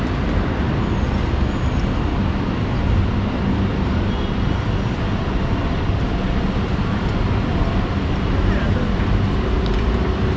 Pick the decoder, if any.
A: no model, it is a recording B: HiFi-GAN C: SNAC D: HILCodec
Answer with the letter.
A